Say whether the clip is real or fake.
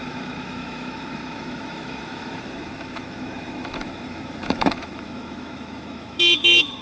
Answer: fake